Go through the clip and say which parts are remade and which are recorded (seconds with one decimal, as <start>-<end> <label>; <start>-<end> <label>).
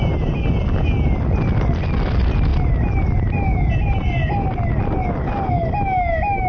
0.0-6.5 recorded